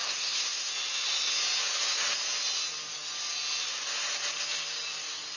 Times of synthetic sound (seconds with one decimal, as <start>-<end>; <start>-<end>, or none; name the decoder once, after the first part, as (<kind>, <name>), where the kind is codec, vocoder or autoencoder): 0.0-0.7 (codec, SNAC)